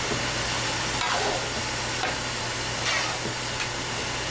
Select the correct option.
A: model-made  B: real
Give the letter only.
B